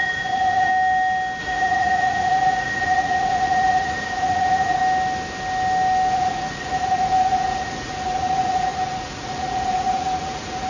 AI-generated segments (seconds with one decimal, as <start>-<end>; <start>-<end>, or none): 0.0-0.7; 1.4-4.8; 6.1-10.7